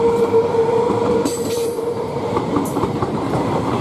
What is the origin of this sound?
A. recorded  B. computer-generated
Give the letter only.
B